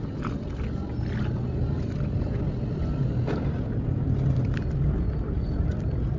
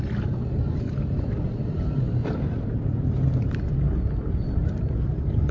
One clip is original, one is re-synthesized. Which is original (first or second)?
first